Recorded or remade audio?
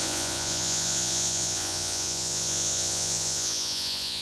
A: remade